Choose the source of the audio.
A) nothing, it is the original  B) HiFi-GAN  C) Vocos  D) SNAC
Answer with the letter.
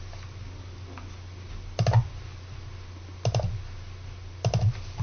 A